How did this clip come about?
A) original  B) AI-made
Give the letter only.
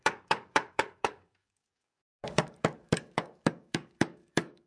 B